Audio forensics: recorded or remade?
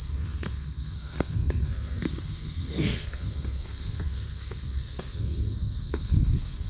remade